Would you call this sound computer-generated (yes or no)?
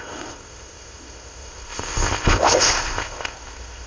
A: yes